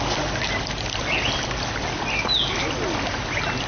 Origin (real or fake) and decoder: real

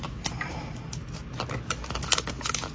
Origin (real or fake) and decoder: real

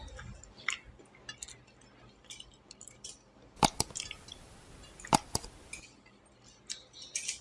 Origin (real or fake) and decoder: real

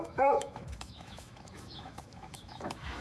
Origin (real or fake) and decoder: fake, autoencoder, DAC-VAE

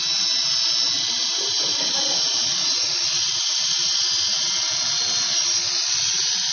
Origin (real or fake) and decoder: real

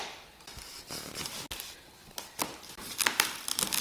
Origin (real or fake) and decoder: real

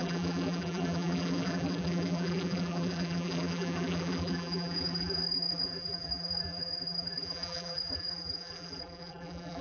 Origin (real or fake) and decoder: fake, vocoder, BigVGAN v2